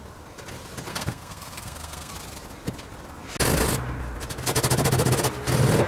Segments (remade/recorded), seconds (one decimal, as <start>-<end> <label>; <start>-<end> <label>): 0.0-0.9 recorded; 0.9-2.1 remade; 2.1-5.9 recorded